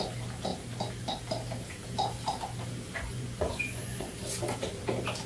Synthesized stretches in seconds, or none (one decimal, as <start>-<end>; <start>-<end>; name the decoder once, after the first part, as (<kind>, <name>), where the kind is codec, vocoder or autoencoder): 2.9-4.1 (vocoder, Vocos)